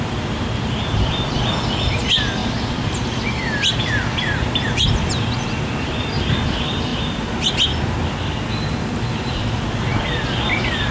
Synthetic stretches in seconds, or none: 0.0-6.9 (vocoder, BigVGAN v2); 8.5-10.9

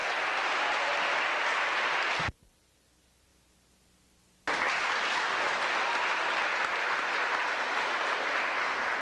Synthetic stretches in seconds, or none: none

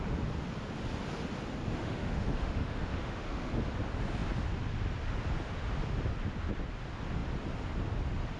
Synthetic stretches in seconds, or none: 1.8-3.5 (autoencoder, DAC-VAE)

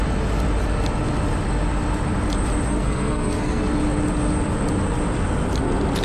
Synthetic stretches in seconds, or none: 2.7-3.6 (codec, SNAC)

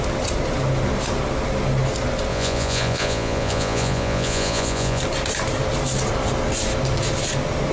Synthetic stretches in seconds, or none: 2.3-5.0 (vocoder, Vocos)

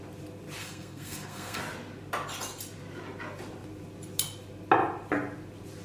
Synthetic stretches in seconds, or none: 0.6-1.6 (codec, SNAC)

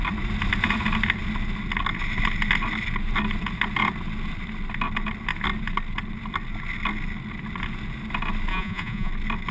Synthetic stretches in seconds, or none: 8.5-9.1 (vocoder, Vocos)